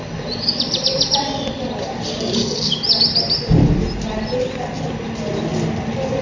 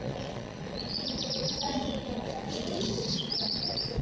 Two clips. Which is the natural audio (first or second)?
first